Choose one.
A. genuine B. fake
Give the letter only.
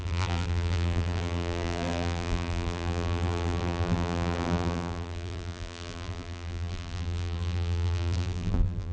B